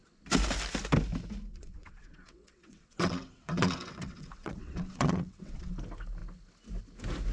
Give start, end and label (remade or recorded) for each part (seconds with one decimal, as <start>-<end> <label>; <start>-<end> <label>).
0.0-1.5 recorded; 1.5-5.7 remade; 5.7-7.3 recorded